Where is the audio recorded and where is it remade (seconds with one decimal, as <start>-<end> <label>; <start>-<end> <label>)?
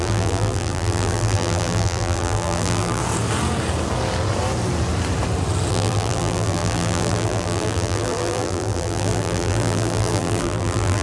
0.0-3.0 remade; 3.0-5.7 recorded; 5.7-11.0 remade